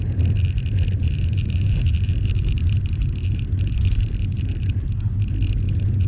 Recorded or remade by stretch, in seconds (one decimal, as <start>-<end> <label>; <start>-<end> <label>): 0.0-1.0 recorded; 1.0-4.7 remade; 4.7-6.1 recorded